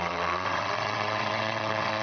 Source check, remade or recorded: remade